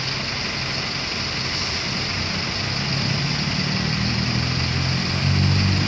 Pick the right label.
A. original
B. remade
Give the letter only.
A